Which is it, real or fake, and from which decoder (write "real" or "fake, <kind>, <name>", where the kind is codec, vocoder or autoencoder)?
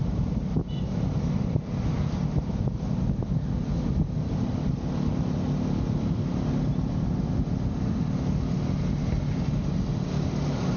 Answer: real